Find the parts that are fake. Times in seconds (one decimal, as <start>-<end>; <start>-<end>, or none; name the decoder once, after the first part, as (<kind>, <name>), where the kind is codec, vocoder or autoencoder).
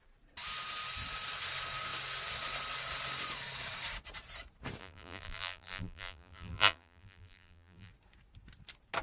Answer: 4.8-7.9 (vocoder, BigVGAN v2)